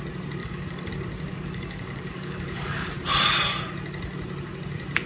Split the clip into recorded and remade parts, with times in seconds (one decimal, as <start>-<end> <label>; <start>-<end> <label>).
0.0-0.4 recorded; 0.4-0.9 remade; 0.9-1.3 recorded; 1.3-2.9 remade; 2.9-5.1 recorded

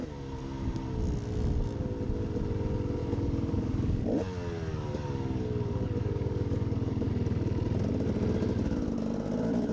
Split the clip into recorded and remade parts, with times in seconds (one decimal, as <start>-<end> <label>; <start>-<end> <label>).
0.0-3.0 recorded; 3.0-4.0 remade; 4.0-4.7 recorded; 4.7-7.1 remade; 7.1-9.7 recorded

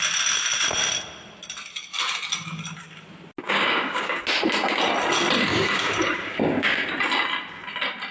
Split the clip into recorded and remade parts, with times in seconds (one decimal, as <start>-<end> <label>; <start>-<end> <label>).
0.0-3.4 recorded; 3.4-4.2 remade; 4.2-5.5 recorded; 5.5-6.9 remade; 6.9-8.1 recorded

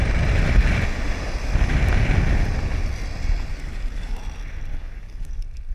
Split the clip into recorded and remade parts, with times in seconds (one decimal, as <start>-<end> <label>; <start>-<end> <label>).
0.0-3.5 recorded; 3.5-4.2 remade; 4.2-4.7 recorded; 4.7-5.3 remade; 5.3-5.7 recorded